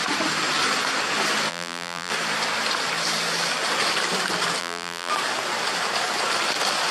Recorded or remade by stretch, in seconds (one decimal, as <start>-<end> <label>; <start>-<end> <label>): 0.0-1.5 recorded; 1.5-2.1 remade; 2.1-4.6 recorded; 4.6-5.1 remade; 5.1-6.9 recorded